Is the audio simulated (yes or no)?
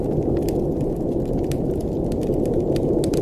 no